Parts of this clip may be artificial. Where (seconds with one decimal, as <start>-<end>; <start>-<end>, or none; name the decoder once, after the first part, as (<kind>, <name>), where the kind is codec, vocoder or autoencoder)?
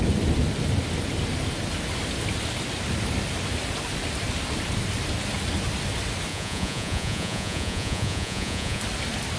6.3-8.8 (vocoder, Vocos)